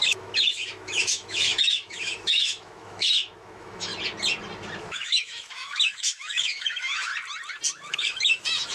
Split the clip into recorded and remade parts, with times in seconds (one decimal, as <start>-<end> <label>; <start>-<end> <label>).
0.0-3.9 remade; 3.9-4.8 recorded; 4.8-7.1 remade; 7.1-7.9 recorded; 7.9-8.7 remade